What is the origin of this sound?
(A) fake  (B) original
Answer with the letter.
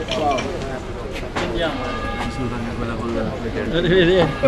B